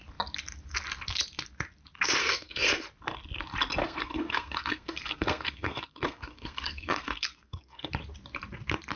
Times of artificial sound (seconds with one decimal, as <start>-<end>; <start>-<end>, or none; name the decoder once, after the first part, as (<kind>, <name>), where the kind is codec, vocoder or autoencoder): 2.2-2.7 (codec, SNAC); 3.8-7.9